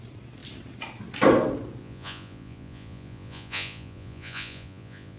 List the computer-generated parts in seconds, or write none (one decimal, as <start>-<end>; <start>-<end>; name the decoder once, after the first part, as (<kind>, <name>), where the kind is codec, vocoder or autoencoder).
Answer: 1.8-5.2 (vocoder, Vocos)